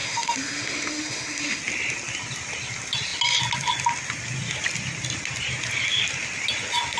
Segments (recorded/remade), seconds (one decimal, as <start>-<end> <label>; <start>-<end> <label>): 0.0-1.6 remade; 1.6-7.0 recorded